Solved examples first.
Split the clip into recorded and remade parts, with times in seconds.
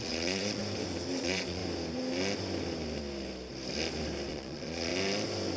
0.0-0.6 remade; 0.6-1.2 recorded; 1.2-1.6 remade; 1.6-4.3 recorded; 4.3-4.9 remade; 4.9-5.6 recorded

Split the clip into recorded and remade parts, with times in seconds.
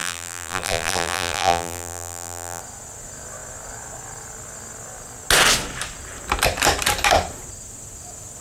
0.0-2.6 remade; 2.6-8.4 recorded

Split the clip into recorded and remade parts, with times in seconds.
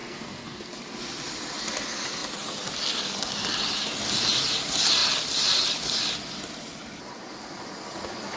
0.0-0.7 remade; 0.7-8.4 recorded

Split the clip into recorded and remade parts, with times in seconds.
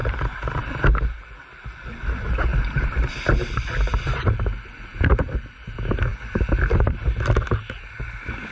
0.0-0.8 remade; 0.8-2.5 recorded; 2.5-4.2 remade; 4.2-8.5 recorded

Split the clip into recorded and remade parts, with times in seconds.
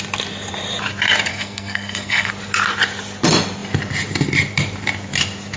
0.0-1.3 recorded; 1.3-2.3 remade; 2.3-5.6 recorded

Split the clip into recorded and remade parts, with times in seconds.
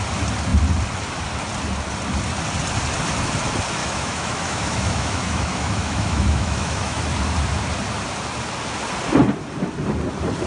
0.0-3.8 recorded; 3.8-7.0 remade; 7.0-10.5 recorded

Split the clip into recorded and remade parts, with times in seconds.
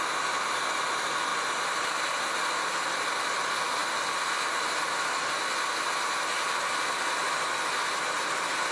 0.0-1.3 recorded; 1.3-2.0 remade; 2.0-8.7 recorded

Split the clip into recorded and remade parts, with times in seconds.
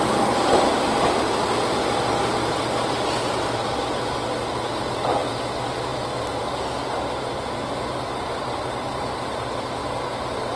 0.0-10.6 recorded